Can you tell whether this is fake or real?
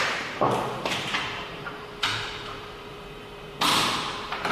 fake